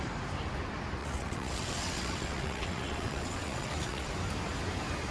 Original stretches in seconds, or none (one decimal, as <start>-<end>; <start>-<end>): 0.0-1.0; 4.1-5.1